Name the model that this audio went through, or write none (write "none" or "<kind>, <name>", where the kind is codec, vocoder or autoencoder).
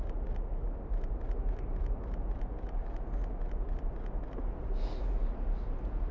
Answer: none